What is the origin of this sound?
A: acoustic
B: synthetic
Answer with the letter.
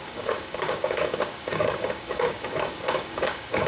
B